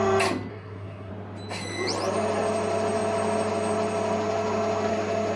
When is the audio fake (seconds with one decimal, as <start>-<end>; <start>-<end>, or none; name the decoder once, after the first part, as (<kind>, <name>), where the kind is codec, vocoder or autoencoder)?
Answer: 0.5-1.1 (codec, SNAC)